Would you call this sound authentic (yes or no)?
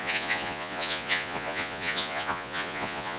no